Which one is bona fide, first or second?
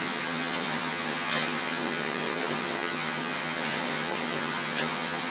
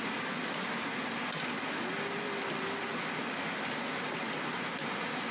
second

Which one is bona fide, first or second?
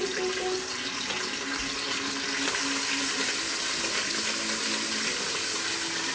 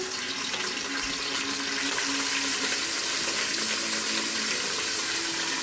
first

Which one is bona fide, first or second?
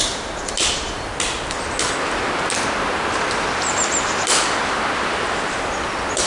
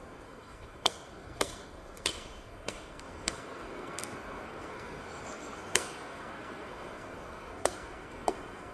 first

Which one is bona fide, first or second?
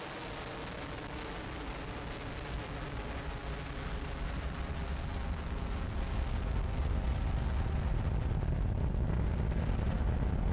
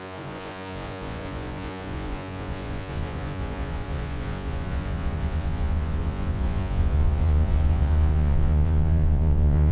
first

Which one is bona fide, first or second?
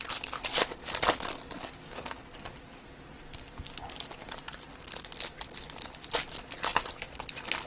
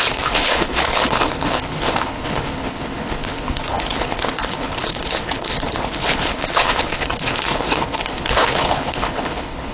first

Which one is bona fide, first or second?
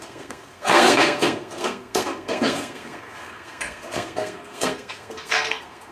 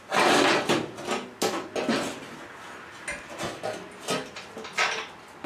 second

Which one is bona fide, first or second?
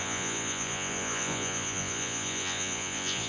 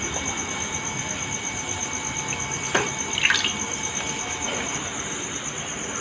second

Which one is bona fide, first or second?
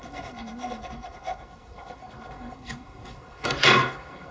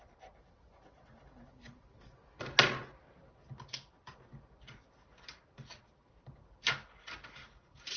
second